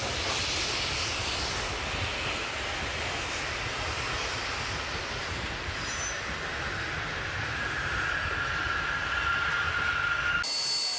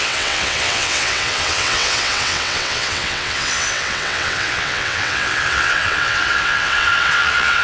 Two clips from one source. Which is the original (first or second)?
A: first